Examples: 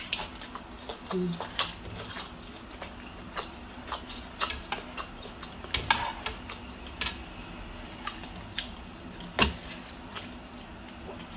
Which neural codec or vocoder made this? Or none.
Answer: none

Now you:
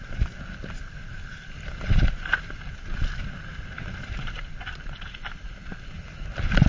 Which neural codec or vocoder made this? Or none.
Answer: none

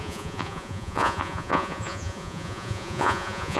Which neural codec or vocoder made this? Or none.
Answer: vocoder, Vocos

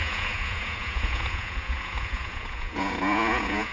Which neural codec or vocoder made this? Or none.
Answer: vocoder, Vocos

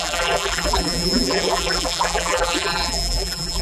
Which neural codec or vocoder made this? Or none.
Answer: vocoder, BigVGAN v2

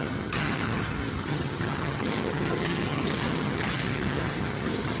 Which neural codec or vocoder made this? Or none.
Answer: vocoder, HiFi-GAN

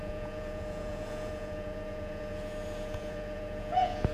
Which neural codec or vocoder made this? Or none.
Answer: vocoder, Vocos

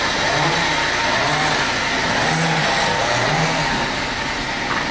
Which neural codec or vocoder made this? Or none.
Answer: none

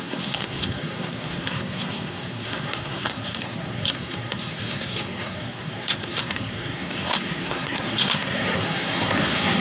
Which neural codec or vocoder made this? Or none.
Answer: codec, SNAC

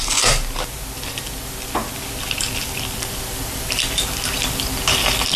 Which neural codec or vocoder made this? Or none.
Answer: none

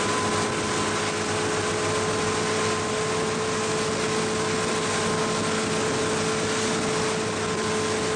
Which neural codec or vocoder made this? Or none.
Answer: none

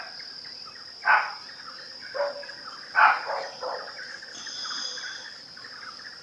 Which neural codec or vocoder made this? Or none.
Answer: none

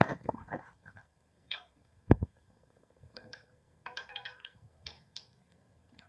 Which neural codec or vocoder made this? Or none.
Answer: codec, SNAC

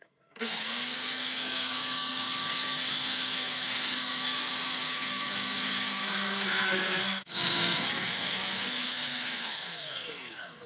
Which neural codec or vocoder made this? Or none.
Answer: codec, SNAC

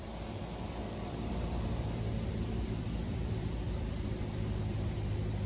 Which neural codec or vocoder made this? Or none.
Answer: vocoder, BigVGAN v2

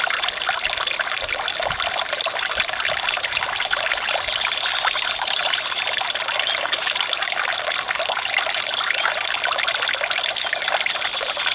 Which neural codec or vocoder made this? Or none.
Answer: none